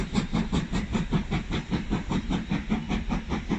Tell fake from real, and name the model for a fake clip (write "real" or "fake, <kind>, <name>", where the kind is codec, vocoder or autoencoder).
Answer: real